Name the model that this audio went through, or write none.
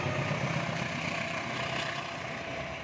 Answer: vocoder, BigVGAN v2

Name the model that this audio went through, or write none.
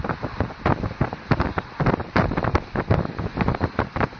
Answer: none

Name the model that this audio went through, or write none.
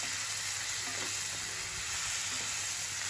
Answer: none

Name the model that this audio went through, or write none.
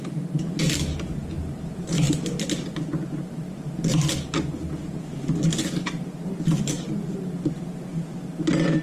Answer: none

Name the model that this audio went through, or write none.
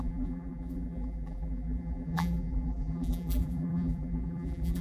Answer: vocoder, BigVGAN v2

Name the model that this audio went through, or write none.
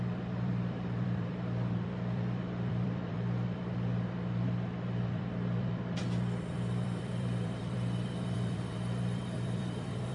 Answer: vocoder, BigVGAN v2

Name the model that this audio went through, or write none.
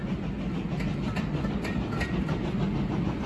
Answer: none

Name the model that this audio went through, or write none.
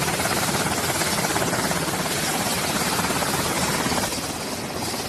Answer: none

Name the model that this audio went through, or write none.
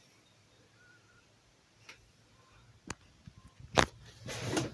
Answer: none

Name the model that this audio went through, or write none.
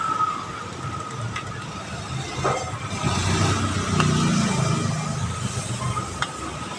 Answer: none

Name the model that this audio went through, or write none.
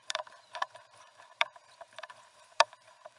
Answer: vocoder, BigVGAN v2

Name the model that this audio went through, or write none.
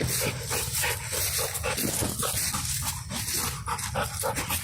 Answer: none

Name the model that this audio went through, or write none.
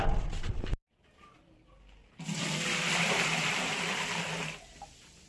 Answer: vocoder, BigVGAN v2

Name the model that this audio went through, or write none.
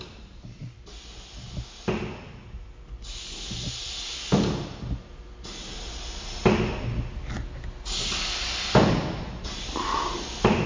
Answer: none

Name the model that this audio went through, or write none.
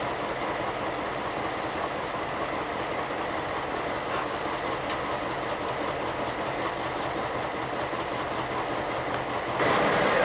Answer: none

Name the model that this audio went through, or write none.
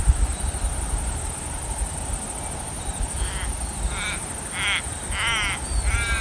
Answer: none